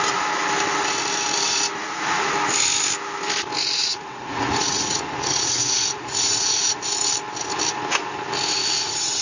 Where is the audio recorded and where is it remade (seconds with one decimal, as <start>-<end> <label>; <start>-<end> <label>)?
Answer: 0.0-1.8 recorded; 1.8-2.3 remade; 2.3-3.8 recorded; 3.8-6.8 remade; 6.8-8.6 recorded; 8.6-9.2 remade

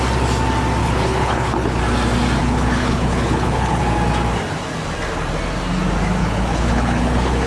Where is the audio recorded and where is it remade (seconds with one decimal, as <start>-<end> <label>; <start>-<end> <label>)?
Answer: 0.0-0.8 recorded; 0.8-1.8 remade; 1.8-2.4 recorded; 2.4-3.8 remade; 3.8-6.2 recorded; 6.2-7.5 remade

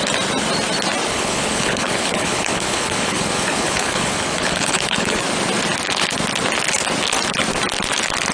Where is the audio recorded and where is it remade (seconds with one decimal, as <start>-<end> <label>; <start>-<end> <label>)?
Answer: 0.0-1.1 recorded; 1.1-5.2 remade; 5.2-8.3 recorded